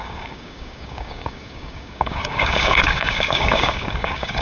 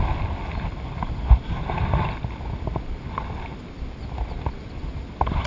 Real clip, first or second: second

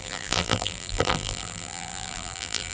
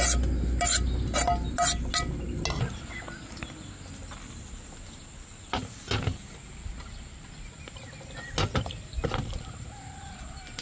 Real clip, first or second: second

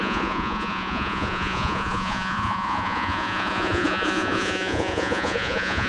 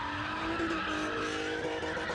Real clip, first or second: second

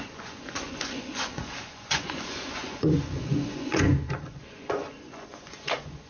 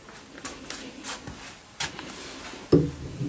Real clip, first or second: second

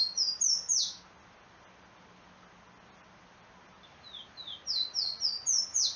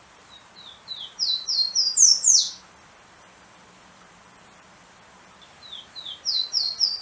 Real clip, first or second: first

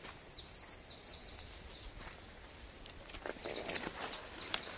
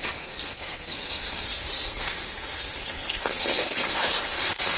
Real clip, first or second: first